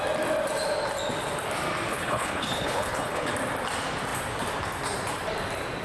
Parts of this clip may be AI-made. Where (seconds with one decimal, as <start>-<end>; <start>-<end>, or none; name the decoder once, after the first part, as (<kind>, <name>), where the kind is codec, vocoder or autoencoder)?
1.9-3.3 (codec, HILCodec)